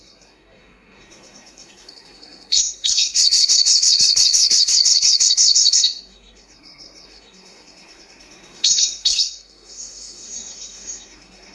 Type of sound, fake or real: fake